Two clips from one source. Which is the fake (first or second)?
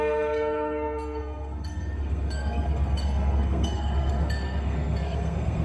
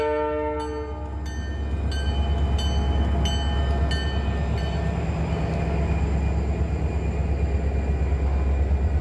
first